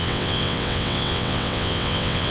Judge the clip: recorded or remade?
remade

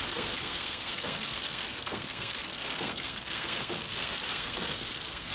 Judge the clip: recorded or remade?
remade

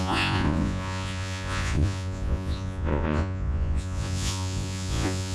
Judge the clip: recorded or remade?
remade